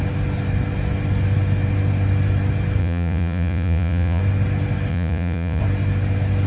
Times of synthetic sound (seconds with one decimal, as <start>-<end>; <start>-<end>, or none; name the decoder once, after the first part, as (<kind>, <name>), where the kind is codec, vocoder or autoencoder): 2.8-4.2 (vocoder, Vocos); 4.9-5.6

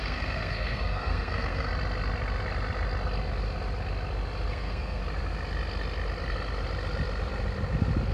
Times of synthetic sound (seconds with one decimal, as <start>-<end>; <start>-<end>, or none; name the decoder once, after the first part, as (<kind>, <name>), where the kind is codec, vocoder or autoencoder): 0.0-1.7 (codec, SNAC); 4.5-5.0

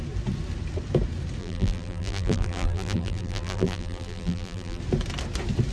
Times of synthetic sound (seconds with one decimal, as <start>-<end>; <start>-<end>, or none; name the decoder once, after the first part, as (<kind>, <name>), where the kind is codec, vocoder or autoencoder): 1.4-4.8 (vocoder, BigVGAN v2)

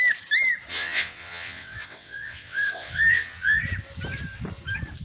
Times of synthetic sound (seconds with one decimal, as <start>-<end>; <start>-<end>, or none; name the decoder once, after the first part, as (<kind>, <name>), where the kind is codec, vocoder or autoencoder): 0.7-3.6 (vocoder, WaveNeXt)